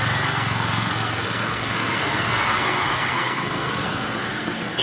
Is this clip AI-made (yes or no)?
yes